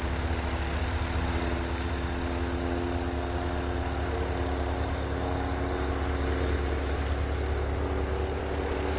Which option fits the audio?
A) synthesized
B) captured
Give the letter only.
B